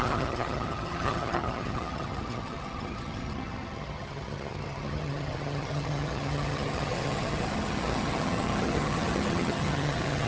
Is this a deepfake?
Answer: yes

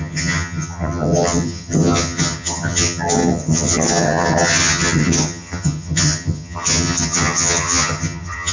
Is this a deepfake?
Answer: yes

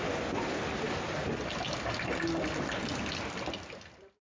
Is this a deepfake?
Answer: no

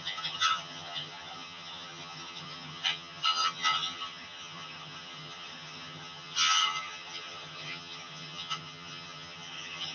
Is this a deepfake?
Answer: yes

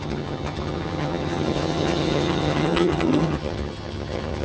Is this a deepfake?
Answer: yes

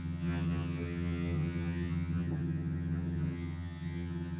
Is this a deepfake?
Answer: yes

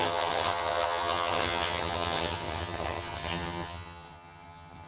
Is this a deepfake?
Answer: yes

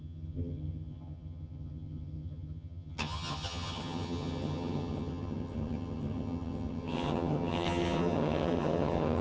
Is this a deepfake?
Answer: yes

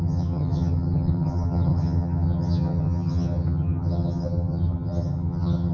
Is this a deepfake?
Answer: yes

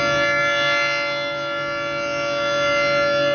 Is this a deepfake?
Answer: no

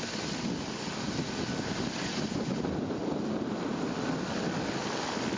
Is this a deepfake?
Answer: no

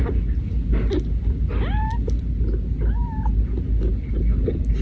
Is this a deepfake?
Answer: no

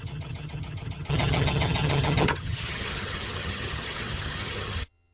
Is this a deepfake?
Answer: yes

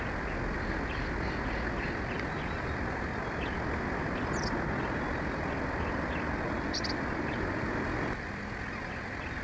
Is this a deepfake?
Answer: no